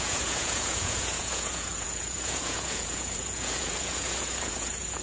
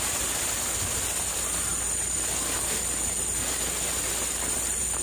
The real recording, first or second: second